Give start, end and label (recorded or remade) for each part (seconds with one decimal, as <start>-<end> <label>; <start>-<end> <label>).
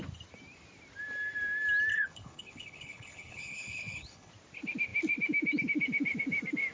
0.0-1.9 recorded; 1.9-4.3 remade; 4.3-6.7 recorded